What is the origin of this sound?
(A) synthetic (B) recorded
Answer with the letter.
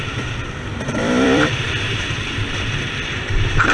A